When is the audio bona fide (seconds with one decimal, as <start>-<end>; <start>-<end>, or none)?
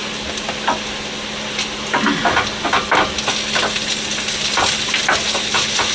0.0-5.9